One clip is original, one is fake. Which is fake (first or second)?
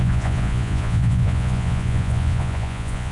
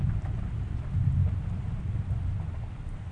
first